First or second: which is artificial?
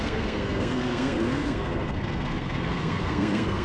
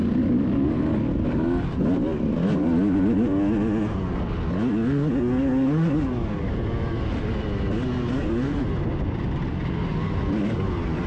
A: first